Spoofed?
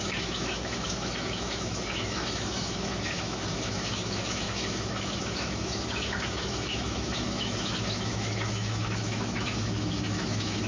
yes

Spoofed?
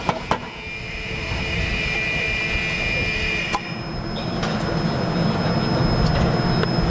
no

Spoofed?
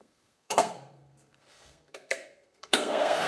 yes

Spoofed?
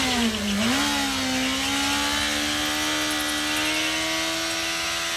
no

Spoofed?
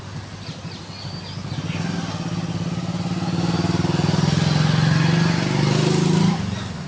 no